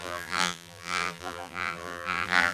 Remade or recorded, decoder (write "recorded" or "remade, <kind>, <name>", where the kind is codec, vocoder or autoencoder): remade, vocoder, BigVGAN v2